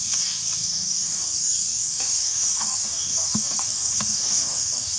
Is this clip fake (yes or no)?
yes